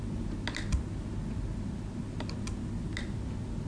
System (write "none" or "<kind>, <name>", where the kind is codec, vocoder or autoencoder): none